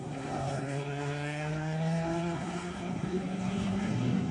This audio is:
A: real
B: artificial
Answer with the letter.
B